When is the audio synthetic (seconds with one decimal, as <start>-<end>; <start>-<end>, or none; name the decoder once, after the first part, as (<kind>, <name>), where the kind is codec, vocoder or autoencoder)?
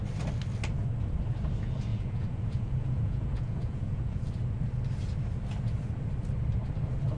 1.9-4.3 (vocoder, Vocos)